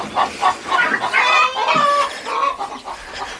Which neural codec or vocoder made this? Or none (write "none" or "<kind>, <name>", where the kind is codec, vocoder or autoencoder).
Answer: none